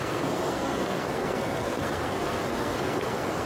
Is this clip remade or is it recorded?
remade